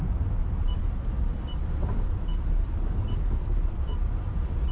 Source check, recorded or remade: recorded